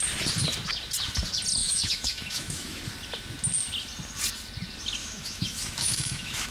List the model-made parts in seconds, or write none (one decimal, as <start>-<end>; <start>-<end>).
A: 1.6-2.8; 5.0-6.5